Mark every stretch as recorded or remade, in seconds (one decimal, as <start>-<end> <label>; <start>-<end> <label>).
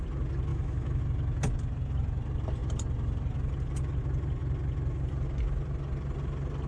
0.0-0.5 recorded; 0.5-1.0 remade; 1.0-6.7 recorded